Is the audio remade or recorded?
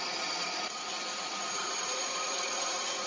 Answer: remade